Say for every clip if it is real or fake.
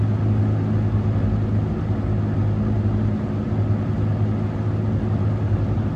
real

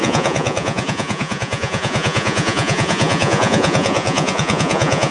fake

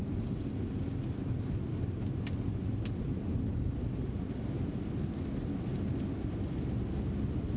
real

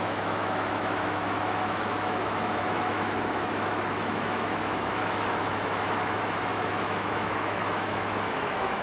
fake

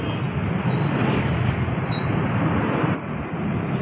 real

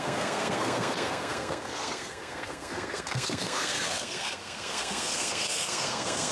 fake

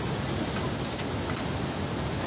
real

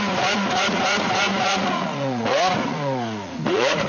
fake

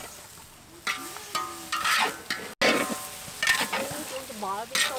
real